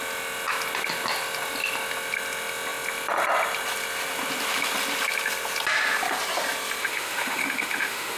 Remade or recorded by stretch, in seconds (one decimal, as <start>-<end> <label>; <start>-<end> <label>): 0.0-6.8 recorded; 6.8-8.2 remade